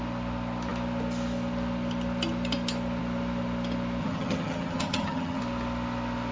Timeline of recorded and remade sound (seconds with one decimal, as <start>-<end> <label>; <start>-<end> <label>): 0.0-4.0 recorded; 4.0-5.4 remade; 5.4-6.3 recorded